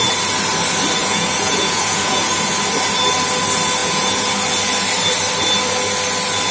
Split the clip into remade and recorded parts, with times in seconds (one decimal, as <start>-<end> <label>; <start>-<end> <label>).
0.0-1.0 recorded; 1.0-2.5 remade; 2.5-3.8 recorded; 3.8-4.3 remade; 4.3-6.5 recorded